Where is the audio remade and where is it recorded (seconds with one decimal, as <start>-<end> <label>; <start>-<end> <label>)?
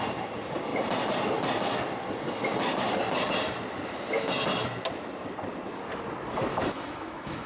0.0-6.5 recorded; 6.5-7.5 remade